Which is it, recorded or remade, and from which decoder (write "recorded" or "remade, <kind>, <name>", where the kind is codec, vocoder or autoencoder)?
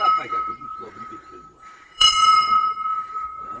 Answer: remade, vocoder, Vocos